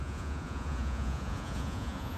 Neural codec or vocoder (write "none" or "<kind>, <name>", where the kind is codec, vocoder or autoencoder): vocoder, Vocos